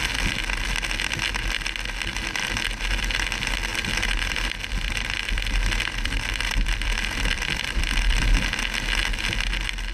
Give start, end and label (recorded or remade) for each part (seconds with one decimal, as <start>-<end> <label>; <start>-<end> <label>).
0.0-3.7 recorded; 3.7-8.2 remade; 8.2-9.9 recorded